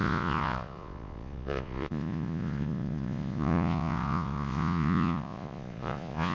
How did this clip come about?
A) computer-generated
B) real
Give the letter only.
A